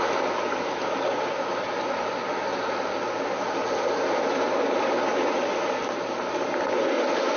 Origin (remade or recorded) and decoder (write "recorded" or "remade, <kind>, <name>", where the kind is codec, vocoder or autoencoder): recorded